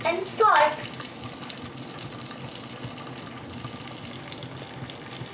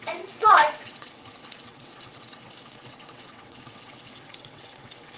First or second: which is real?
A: first